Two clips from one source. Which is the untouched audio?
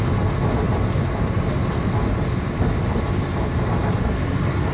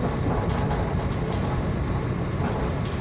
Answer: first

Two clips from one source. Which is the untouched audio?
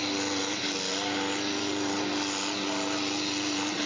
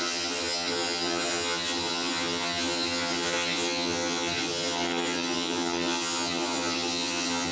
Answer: first